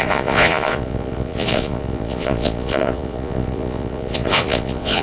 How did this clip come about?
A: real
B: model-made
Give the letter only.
B